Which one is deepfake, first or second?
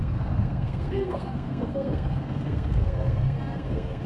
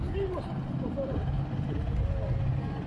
first